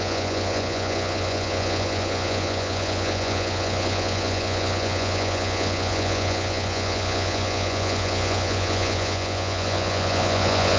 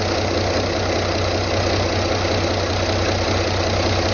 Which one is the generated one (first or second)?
first